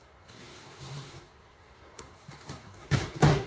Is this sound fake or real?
fake